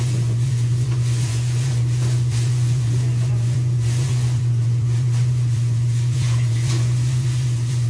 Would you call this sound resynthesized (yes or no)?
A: yes